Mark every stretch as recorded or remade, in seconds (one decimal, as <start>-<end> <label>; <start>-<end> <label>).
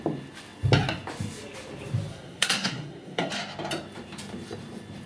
0.0-2.1 recorded; 2.1-3.3 remade; 3.3-5.1 recorded